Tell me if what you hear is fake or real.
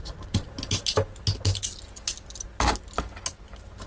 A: real